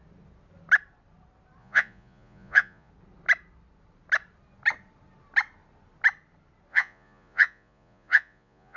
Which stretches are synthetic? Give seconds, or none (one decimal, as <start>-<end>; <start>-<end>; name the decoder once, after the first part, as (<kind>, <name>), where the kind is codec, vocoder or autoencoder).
1.6-2.9 (vocoder, Vocos); 6.7-8.8